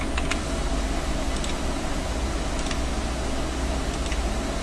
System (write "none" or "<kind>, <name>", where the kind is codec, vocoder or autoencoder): none